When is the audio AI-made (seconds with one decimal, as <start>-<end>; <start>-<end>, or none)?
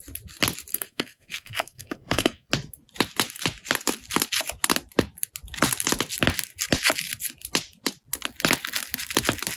0.7-2.5